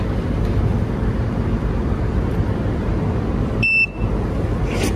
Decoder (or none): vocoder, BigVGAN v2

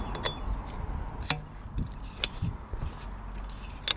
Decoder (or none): none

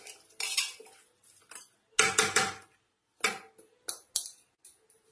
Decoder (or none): none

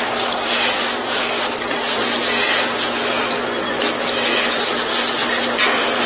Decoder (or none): none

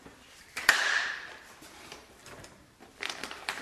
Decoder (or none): vocoder, BigVGAN v2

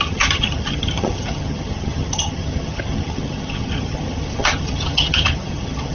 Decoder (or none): vocoder, HiFi-GAN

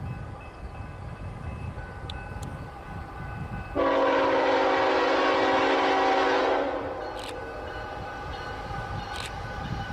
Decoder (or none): none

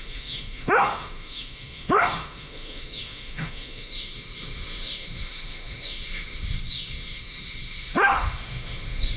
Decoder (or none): autoencoder, DAC-VAE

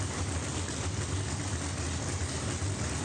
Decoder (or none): none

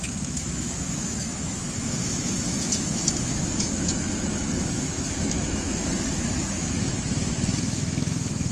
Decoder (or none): autoencoder, DAC-VAE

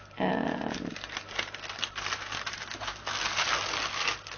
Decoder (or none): none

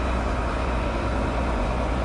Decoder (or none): vocoder, Vocos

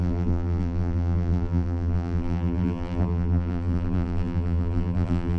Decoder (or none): vocoder, BigVGAN v2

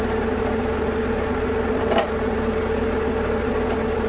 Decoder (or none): none